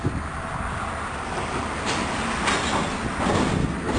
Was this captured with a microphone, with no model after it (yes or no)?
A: yes